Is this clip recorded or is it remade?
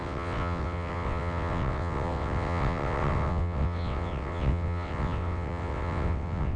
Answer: remade